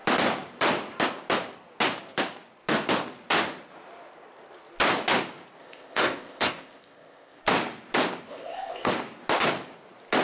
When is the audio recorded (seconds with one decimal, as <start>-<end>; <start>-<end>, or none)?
0.0-5.6; 7.4-8.3; 8.9-10.2